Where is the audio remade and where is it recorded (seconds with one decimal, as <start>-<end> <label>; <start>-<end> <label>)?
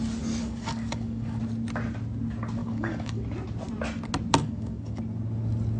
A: 0.0-0.4 recorded; 0.4-1.4 remade; 1.4-2.6 recorded; 2.6-3.2 remade; 3.2-4.4 recorded; 4.4-5.0 remade; 5.0-5.8 recorded